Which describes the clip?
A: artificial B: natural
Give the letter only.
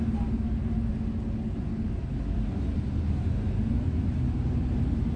B